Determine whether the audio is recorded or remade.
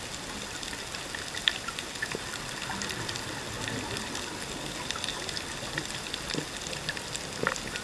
recorded